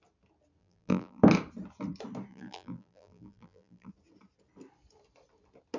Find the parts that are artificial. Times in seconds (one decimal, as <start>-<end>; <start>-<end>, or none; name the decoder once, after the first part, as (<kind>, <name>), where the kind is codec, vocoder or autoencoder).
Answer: 0.6-1.2 (vocoder, BigVGAN v2); 2.3-3.9